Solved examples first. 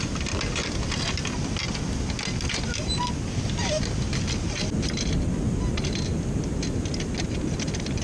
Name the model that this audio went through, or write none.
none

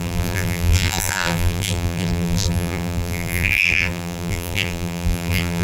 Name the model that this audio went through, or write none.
vocoder, BigVGAN v2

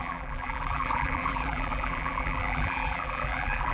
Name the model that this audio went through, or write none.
vocoder, BigVGAN v2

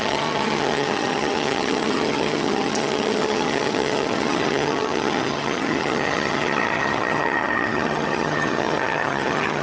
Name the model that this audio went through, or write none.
vocoder, HiFi-GAN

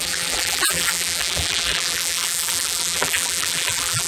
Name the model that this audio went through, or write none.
vocoder, BigVGAN v2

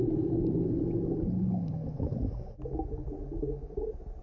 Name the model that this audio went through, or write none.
none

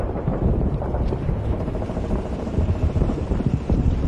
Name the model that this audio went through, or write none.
vocoder, BigVGAN v2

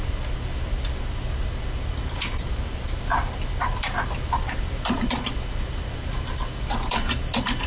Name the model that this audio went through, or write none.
none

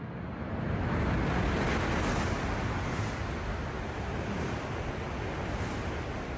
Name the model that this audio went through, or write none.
none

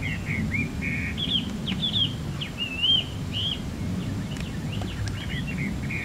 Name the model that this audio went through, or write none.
none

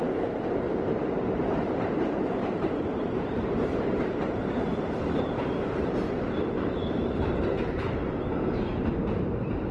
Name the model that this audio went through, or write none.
vocoder, BigVGAN v2